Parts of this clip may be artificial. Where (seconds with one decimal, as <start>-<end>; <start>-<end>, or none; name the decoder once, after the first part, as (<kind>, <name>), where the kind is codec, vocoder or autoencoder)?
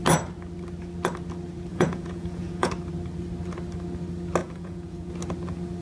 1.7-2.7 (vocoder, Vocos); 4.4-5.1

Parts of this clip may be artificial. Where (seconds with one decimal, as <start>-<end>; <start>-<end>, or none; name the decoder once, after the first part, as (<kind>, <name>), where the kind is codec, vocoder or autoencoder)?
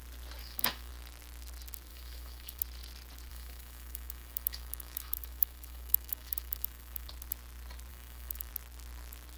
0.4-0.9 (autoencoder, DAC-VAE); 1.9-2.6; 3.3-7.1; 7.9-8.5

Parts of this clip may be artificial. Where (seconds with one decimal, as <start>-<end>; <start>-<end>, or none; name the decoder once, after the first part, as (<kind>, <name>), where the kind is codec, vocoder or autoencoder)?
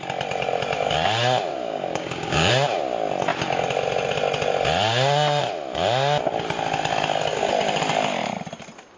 1.5-2.5 (codec, DAC)